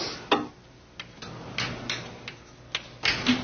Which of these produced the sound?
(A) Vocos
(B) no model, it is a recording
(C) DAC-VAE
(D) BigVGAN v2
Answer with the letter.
B